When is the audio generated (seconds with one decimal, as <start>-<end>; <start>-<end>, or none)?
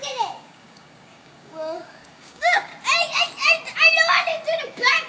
0.0-2.7; 4.6-5.1